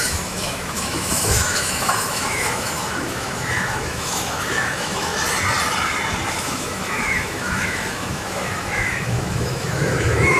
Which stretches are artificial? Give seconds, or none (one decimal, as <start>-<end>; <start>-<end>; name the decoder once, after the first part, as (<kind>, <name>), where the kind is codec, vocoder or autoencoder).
0.0-5.1 (autoencoder, DAC-VAE); 6.3-10.4